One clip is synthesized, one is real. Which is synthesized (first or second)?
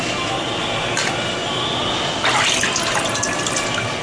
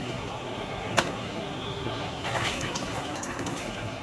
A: second